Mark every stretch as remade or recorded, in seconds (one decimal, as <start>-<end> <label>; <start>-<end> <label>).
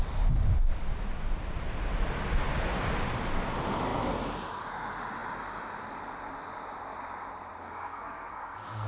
0.0-7.6 recorded; 7.6-8.9 remade